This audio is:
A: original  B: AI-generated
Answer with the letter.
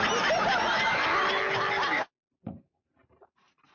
A